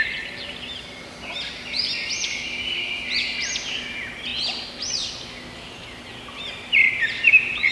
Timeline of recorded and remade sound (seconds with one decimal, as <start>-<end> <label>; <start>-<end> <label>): 0.0-7.7 recorded